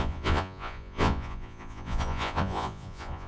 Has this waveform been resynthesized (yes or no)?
yes